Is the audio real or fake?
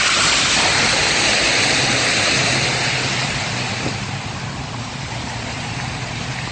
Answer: real